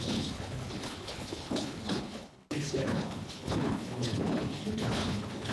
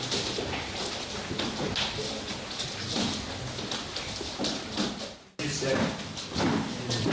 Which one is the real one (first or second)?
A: second